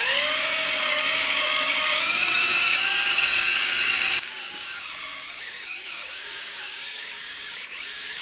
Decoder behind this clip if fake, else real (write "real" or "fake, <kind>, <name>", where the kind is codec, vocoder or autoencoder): fake, codec, DAC